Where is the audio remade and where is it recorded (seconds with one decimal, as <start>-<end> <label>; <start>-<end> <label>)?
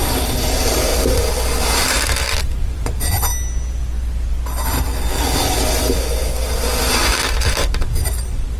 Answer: 0.0-0.9 remade; 0.9-2.4 recorded; 2.4-3.3 remade; 3.3-6.9 recorded; 6.9-8.6 remade